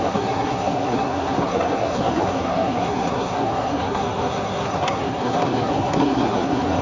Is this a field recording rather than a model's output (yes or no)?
no